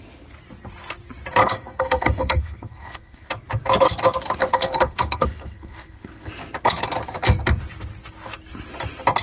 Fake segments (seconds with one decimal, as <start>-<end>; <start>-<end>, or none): 1.4-3.3; 4.5-6.3

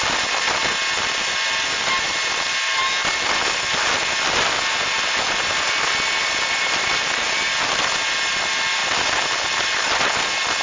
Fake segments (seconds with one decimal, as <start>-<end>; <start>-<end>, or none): none

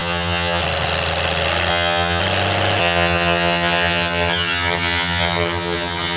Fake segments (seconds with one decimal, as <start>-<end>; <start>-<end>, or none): 0.0-0.6; 1.7-2.2; 2.8-6.2

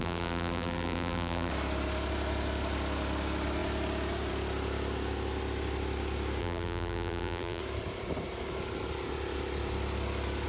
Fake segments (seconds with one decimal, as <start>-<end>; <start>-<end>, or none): 0.0-1.5; 6.4-7.6

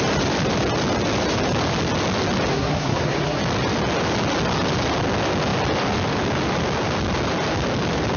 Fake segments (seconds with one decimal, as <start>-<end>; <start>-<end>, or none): 2.5-3.4

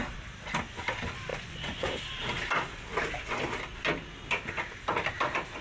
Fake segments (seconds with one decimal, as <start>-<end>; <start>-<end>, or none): 1.3-1.9